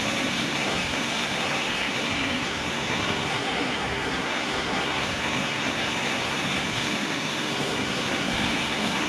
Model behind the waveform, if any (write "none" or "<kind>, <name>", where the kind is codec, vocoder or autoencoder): codec, SNAC